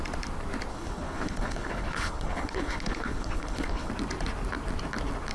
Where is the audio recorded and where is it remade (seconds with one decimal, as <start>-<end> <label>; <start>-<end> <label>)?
0.0-0.7 recorded; 0.7-3.9 remade; 3.9-5.3 recorded